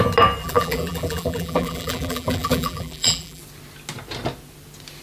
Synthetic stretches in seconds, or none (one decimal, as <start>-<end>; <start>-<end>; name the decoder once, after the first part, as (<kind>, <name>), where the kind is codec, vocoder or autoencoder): 0.4-3.4 (vocoder, BigVGAN v2)

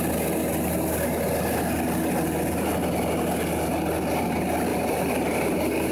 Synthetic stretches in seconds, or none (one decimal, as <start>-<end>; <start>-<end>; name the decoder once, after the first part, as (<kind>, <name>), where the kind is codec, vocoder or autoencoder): 4.7-5.9 (vocoder, BigVGAN v2)

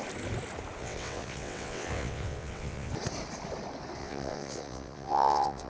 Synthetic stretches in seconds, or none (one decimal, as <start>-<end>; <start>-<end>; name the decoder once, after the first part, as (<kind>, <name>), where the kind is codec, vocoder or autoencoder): 0.8-2.9 (vocoder, WaveNeXt); 4.0-5.7

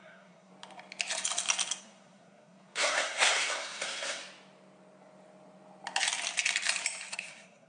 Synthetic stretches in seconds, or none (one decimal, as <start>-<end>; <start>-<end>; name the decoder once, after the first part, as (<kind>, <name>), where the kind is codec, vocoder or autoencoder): 0.0-0.5 (codec, SNAC); 1.8-4.2; 7.1-7.7

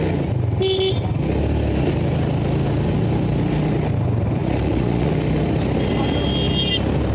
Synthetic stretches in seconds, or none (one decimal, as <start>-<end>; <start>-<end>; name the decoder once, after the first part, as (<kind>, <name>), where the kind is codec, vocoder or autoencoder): 4.4-5.1 (vocoder, Vocos)

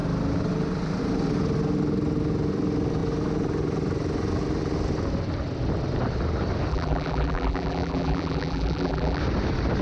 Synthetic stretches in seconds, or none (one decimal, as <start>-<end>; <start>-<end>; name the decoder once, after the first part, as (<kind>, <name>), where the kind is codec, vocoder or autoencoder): 6.7-9.2 (vocoder, BigVGAN v2)

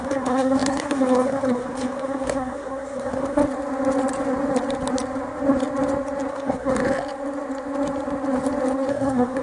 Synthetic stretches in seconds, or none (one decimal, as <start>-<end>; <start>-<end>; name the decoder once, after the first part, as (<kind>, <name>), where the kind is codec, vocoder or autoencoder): 0.0-3.4 (codec, SNAC); 6.3-6.8; 8.9-9.4